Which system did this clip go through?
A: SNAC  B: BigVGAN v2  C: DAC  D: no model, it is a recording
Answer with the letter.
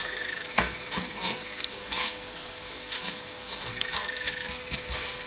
A